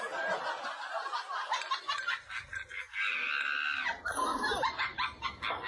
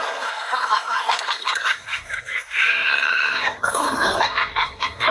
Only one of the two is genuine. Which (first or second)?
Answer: first